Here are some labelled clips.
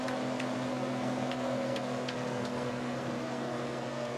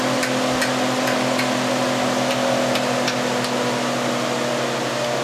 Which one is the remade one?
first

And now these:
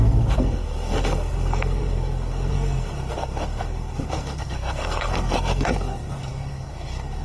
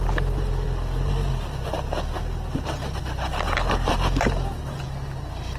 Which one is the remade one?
first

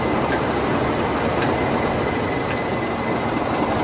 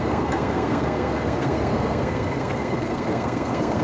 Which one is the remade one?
second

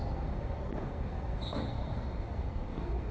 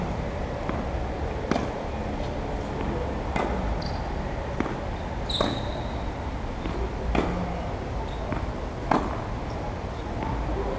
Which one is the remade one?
first